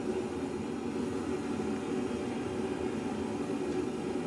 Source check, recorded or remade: recorded